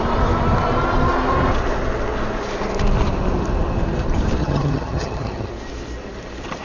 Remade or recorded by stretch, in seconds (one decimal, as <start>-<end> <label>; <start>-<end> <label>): 0.0-4.4 recorded; 4.4-5.5 remade; 5.5-6.6 recorded